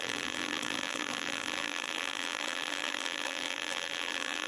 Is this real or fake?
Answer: fake